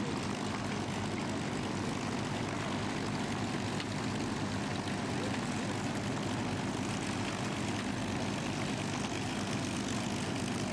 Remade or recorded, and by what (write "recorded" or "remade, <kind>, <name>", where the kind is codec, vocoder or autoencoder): recorded